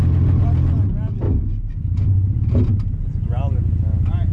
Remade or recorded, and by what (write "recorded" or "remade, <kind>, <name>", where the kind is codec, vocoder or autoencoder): recorded